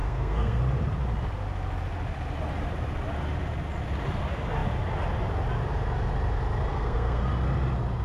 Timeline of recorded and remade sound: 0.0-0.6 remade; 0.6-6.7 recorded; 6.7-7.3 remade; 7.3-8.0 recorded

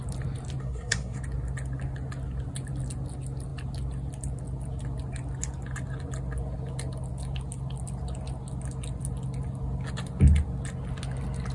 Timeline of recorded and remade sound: 0.0-0.6 recorded; 0.6-1.2 remade; 1.2-11.5 recorded

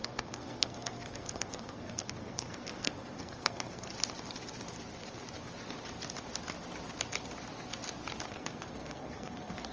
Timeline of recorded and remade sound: 0.0-3.9 remade; 3.9-8.3 recorded; 8.3-9.7 remade

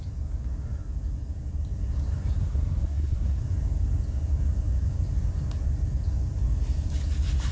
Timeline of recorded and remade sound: 0.0-2.4 recorded; 2.4-3.4 remade; 3.4-7.5 recorded

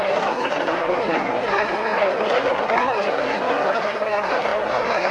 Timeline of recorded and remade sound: 0.0-5.1 remade

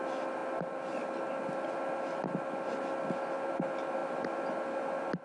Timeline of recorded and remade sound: 0.0-5.2 recorded

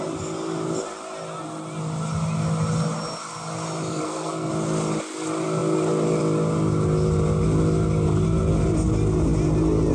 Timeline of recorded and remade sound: 0.0-3.9 recorded; 3.9-4.5 remade; 4.5-9.9 recorded

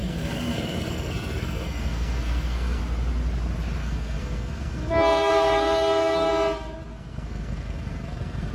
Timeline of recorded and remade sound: 0.0-2.8 remade; 2.8-3.8 recorded; 3.8-6.3 remade; 6.3-6.9 recorded; 6.9-8.5 remade